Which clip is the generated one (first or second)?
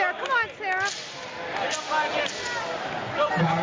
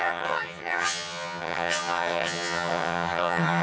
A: second